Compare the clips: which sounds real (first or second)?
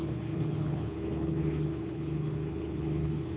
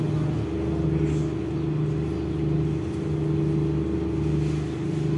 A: second